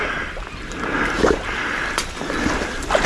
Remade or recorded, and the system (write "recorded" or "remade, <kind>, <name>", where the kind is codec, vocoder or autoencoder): recorded